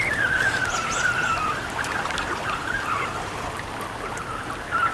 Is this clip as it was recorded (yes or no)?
yes